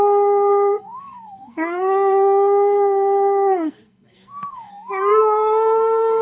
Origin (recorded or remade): remade